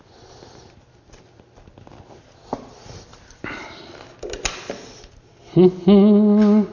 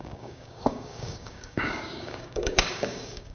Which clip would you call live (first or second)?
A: first